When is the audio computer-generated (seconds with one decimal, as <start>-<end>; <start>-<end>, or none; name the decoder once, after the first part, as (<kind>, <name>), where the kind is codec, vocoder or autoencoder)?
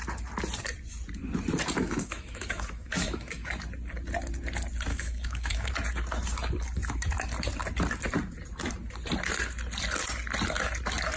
1.8-3.5 (autoencoder, DAC-VAE); 4.9-5.7